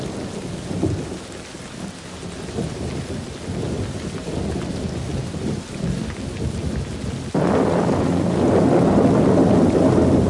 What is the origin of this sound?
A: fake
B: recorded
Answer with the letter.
B